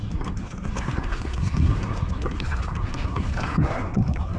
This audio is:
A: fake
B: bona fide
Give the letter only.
A